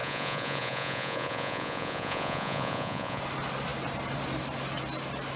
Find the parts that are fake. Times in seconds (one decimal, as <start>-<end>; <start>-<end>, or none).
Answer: 0.0-3.2